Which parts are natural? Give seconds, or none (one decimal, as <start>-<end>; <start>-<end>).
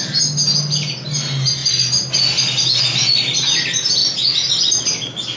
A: 0.0-5.4